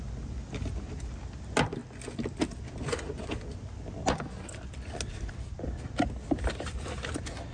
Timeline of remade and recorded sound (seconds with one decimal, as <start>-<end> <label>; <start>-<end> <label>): 0.0-7.5 recorded